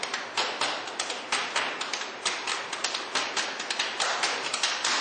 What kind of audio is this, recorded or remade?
recorded